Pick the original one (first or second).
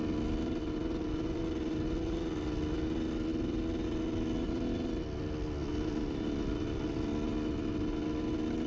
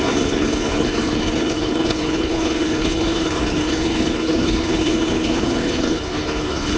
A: first